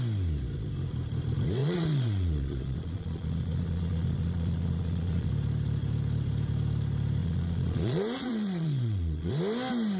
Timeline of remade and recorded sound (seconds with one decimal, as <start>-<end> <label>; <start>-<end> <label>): 0.0-1.6 recorded; 1.6-5.3 remade; 5.3-7.2 recorded; 7.2-9.3 remade; 9.3-10.0 recorded